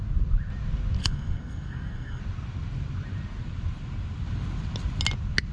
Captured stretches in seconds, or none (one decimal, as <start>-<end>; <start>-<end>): 0.0-1.0; 2.2-5.5